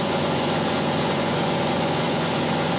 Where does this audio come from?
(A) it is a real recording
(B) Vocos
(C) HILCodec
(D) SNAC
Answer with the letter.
B